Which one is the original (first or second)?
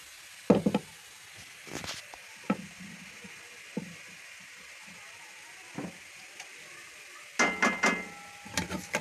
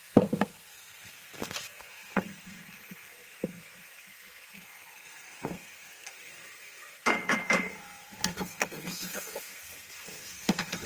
first